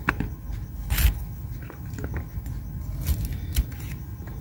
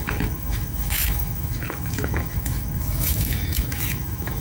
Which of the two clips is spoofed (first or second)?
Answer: second